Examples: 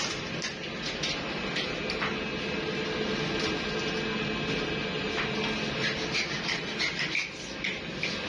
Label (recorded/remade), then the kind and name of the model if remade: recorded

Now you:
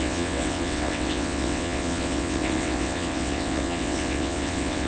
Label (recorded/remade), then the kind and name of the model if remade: remade, vocoder, WaveNeXt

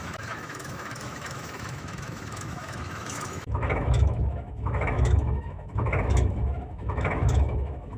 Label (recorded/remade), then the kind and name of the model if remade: remade, autoencoder, DAC-VAE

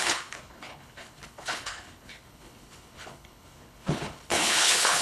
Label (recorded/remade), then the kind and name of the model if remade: remade, codec, HILCodec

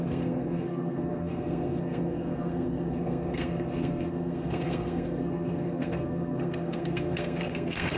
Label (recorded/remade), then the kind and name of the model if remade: remade, codec, SNAC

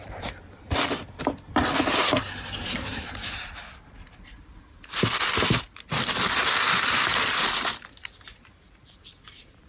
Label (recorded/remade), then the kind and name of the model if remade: remade, vocoder, BigVGAN v2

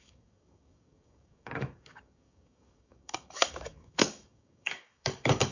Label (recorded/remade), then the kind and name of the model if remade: remade, codec, DAC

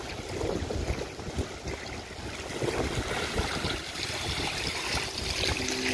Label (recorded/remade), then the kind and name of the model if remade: recorded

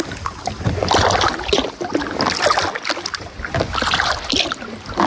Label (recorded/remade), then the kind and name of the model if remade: recorded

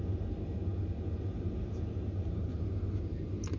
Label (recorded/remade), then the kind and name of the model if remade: recorded